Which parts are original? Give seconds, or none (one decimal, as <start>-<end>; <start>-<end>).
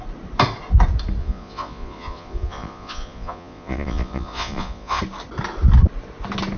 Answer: 0.0-1.2; 5.0-6.6